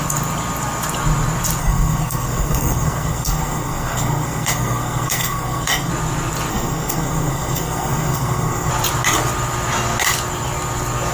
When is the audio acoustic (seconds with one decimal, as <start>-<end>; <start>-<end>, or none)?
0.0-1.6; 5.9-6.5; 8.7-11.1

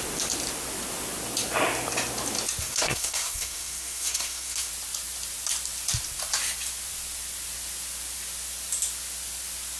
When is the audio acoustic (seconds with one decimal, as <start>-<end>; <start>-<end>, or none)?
0.0-2.6; 4.7-9.8

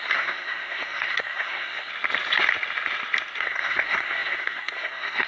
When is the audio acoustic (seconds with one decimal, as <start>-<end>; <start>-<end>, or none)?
1.9-3.4

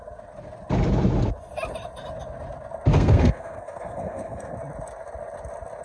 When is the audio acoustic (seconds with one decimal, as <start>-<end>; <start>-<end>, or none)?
0.0-2.9; 4.5-5.8

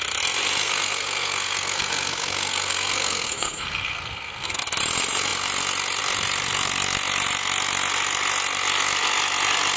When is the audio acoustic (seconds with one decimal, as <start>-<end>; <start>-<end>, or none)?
0.0-0.6; 4.6-9.8

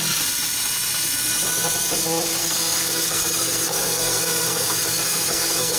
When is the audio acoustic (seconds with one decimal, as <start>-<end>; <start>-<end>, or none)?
0.0-2.4